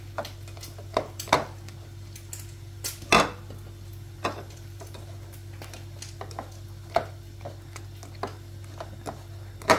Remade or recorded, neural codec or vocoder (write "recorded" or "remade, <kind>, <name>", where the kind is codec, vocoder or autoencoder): recorded